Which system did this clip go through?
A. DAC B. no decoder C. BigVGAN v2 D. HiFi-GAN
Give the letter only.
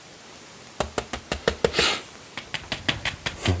B